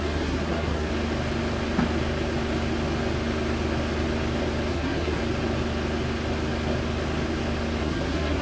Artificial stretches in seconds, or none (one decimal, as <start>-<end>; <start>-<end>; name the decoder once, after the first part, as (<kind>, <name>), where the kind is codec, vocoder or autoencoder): 0.0-0.9 (codec, SNAC); 4.7-5.2; 7.8-8.4